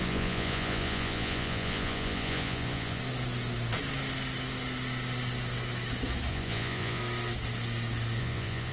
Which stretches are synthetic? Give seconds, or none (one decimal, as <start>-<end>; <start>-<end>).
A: 0.0-3.0; 6.3-7.0; 8.2-8.7